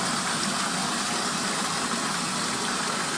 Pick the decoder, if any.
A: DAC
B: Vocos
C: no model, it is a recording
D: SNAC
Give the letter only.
C